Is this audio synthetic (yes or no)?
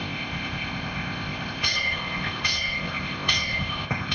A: yes